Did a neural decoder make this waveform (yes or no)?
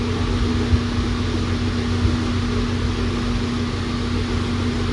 no